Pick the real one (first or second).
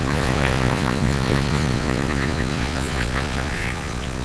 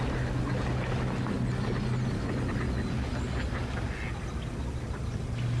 second